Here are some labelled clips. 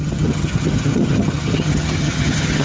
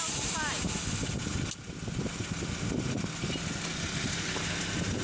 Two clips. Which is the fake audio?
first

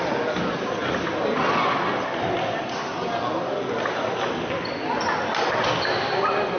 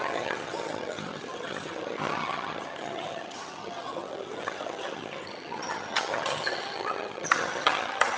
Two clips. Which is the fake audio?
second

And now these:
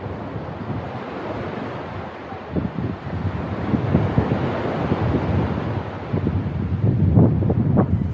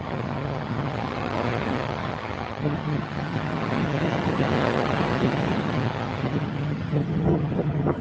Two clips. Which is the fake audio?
second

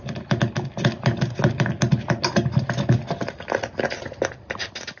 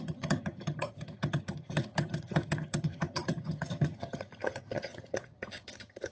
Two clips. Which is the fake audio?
second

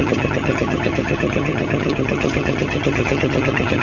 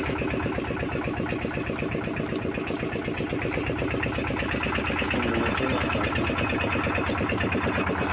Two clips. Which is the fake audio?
first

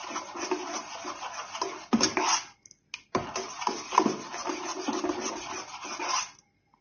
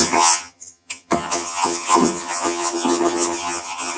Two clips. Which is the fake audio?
second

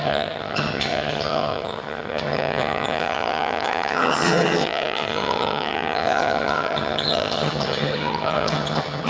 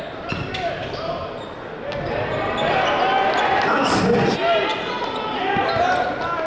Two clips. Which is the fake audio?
first